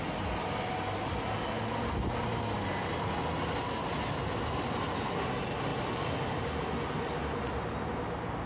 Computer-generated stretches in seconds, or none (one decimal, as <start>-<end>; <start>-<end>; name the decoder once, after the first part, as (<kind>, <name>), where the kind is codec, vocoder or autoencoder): none